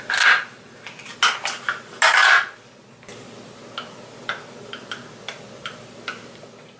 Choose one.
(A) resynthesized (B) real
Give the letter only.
B